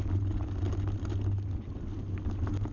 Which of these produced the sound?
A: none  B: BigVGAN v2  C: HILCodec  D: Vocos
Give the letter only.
A